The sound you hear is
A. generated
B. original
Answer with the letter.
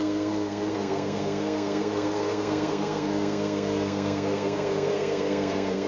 A